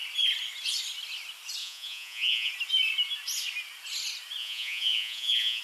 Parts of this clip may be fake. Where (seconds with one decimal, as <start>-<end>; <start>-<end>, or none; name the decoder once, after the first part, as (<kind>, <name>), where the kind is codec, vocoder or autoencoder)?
1.6-2.5 (vocoder, Vocos); 4.4-5.6